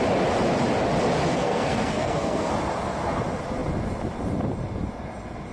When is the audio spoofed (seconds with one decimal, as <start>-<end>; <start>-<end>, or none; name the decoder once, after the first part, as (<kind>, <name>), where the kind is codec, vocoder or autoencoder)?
1.3-2.5 (codec, SNAC)